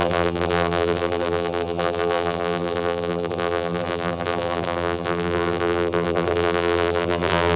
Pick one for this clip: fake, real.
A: fake